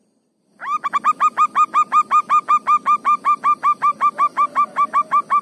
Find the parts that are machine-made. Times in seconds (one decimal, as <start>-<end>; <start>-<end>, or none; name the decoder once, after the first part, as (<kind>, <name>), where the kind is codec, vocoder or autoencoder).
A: none